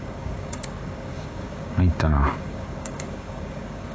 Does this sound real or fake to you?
fake